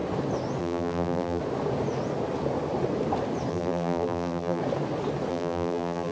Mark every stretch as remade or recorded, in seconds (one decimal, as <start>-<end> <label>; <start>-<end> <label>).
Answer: 0.0-0.6 recorded; 0.6-1.4 remade; 1.4-3.5 recorded; 3.5-4.6 remade; 4.6-5.3 recorded; 5.3-6.1 remade